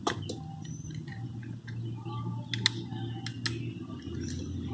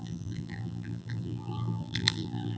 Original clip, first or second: first